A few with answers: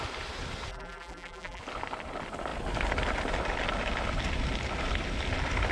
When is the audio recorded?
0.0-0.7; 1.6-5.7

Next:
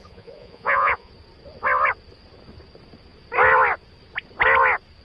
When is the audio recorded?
1.1-5.0

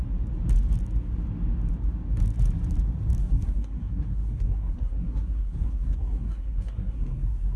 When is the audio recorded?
0.0-3.2

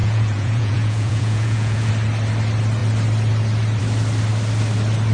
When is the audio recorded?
1.9-5.1